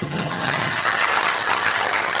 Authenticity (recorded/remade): remade